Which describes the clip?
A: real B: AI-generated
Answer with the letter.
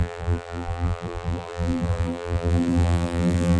B